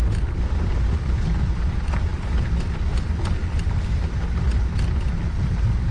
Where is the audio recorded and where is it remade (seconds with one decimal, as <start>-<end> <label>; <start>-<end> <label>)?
0.0-5.9 recorded